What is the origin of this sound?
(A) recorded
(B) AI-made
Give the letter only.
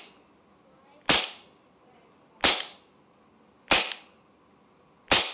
A